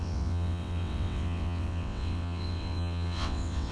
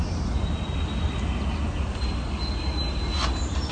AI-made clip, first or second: first